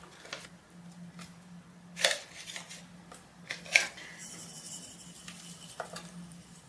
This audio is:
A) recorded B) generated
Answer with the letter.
A